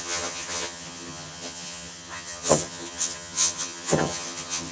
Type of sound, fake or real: fake